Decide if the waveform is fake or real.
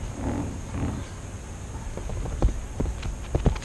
real